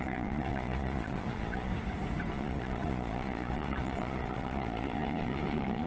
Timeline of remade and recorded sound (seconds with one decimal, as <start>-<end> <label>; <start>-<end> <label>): 0.0-1.7 remade; 1.7-2.3 recorded; 2.3-5.9 remade